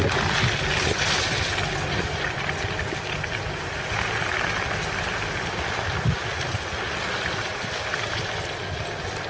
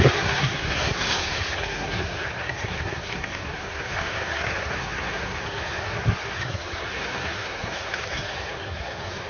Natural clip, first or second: first